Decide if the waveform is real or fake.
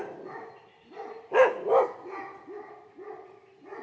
real